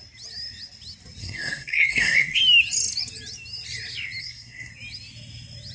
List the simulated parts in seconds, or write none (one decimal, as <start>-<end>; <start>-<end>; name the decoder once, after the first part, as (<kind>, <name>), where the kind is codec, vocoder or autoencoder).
1.2-2.4 (codec, SNAC); 4.2-4.7